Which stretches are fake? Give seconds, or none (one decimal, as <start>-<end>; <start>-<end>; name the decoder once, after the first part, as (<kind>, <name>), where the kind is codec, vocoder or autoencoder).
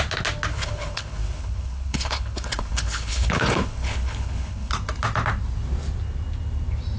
0.5-4.7 (codec, HILCodec)